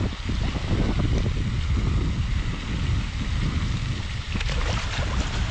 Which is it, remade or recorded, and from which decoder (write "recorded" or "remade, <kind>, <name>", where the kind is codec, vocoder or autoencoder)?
recorded